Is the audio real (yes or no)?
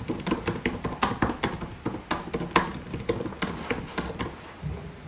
yes